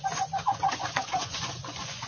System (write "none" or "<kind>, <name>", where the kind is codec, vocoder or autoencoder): vocoder, Vocos